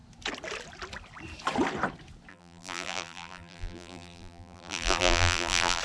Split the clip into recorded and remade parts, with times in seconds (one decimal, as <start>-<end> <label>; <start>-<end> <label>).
0.0-2.3 recorded; 2.3-5.8 remade